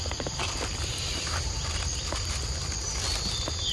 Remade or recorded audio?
recorded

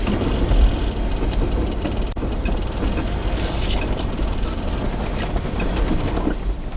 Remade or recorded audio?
recorded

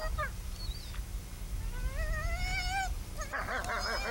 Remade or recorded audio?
recorded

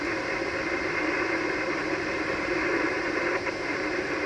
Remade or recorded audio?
remade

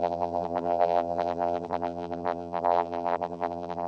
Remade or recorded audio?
remade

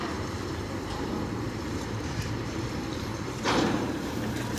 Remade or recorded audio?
remade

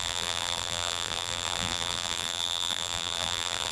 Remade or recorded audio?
remade